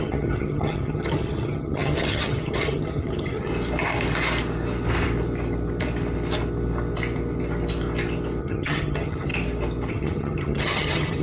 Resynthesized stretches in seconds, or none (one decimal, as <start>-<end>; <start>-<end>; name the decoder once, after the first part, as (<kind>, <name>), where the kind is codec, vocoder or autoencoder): 0.0-3.5 (vocoder, HiFi-GAN); 8.4-9.3; 9.9-11.2